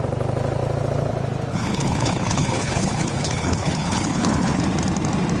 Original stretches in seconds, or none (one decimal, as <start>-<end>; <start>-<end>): 0.0-1.5; 4.6-5.4